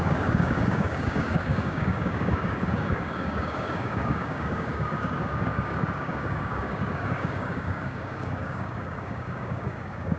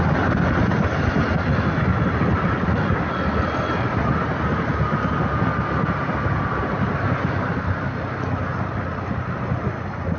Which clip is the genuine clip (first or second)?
second